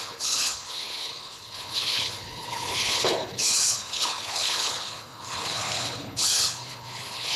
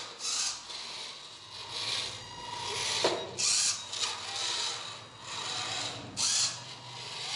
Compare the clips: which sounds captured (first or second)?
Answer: second